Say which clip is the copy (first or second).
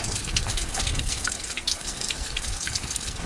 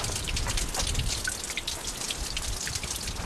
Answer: first